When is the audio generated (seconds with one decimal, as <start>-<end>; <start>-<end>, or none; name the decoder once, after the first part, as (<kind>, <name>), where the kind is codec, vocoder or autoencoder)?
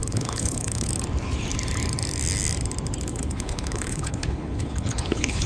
0.0-0.9 (codec, HILCodec); 3.1-5.5